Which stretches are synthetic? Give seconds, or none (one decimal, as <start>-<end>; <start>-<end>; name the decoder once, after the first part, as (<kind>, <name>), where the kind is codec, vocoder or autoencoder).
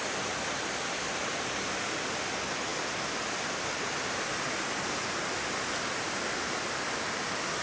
none